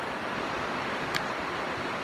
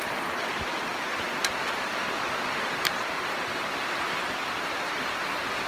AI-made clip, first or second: first